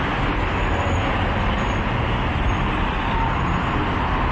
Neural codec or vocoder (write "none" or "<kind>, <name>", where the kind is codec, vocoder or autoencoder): none